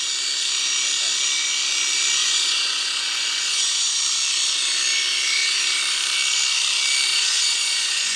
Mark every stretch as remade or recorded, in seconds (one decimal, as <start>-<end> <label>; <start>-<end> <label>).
0.0-2.2 recorded; 2.2-4.0 remade; 4.0-7.1 recorded; 7.1-8.2 remade